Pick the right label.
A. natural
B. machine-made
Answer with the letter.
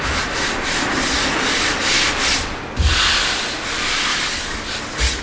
A